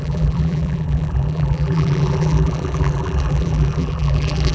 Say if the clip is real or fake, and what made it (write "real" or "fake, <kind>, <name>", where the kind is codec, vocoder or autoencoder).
fake, vocoder, BigVGAN v2